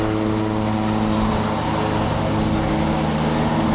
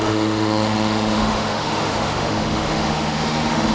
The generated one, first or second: second